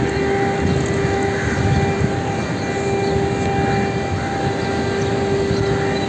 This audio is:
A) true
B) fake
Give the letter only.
A